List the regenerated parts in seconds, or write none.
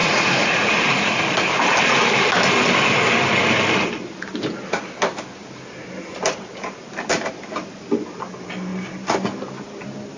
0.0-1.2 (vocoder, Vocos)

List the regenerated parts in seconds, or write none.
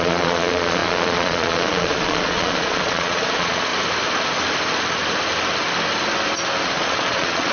0.0-3.7 (vocoder, Vocos); 6.6-7.5